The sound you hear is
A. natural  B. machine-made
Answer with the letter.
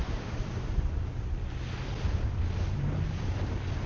A